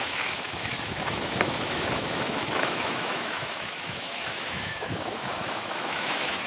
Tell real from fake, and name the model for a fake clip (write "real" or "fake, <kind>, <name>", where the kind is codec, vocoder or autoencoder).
fake, autoencoder, DAC-VAE